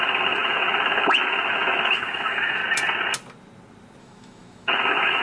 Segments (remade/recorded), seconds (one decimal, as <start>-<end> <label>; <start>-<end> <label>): 0.0-2.6 remade; 2.6-4.0 recorded; 4.0-5.2 remade